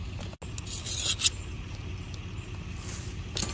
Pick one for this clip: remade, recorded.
recorded